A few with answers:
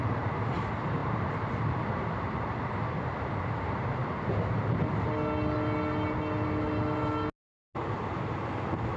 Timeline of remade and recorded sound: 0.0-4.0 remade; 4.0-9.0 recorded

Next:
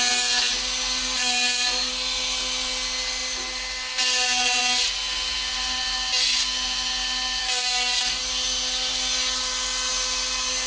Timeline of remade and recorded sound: 0.0-1.0 recorded; 1.0-1.9 remade; 1.9-7.4 recorded; 7.4-8.2 remade; 8.2-10.7 recorded

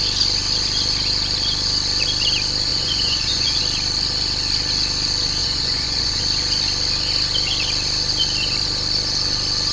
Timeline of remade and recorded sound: 0.0-2.7 recorded; 2.7-3.6 remade; 3.6-5.4 recorded; 5.4-6.2 remade; 6.2-9.7 recorded

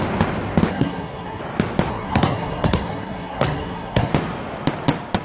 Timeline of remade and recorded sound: 0.0-0.7 recorded; 0.7-1.4 remade; 1.4-1.9 recorded; 1.9-4.1 remade; 4.1-5.2 recorded

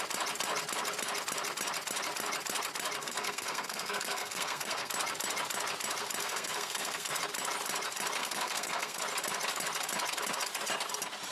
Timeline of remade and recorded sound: 0.0-3.0 recorded; 3.0-4.9 remade; 4.9-6.2 recorded; 6.2-7.2 remade; 7.2-8.2 recorded; 8.2-9.0 remade; 9.0-11.3 recorded

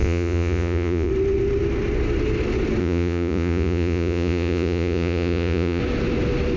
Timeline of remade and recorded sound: 0.0-1.1 remade; 1.1-2.8 recorded; 2.8-5.8 remade; 5.8-6.6 recorded

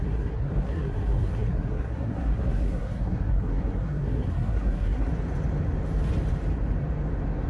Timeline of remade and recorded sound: 0.0-5.1 remade; 5.1-7.5 recorded

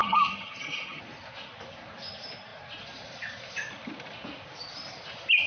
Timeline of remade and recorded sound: 0.0-1.0 remade; 1.0-5.5 recorded